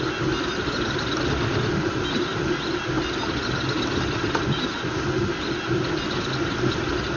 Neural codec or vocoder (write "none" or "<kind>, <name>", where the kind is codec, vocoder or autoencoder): none